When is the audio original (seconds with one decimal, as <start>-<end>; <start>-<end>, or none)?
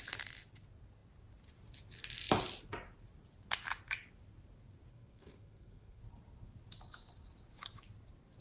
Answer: 0.0-4.9; 6.0-8.4